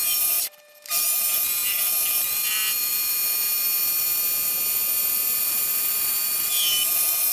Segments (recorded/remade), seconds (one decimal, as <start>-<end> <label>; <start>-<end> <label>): 0.0-7.3 recorded